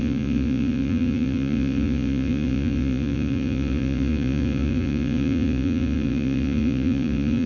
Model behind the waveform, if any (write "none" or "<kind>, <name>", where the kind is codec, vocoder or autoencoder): vocoder, Vocos